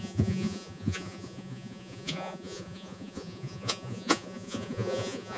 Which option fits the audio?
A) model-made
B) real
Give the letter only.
A